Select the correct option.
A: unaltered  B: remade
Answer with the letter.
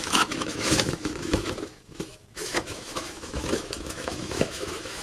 B